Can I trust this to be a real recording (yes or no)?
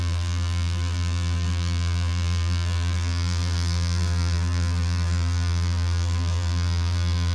no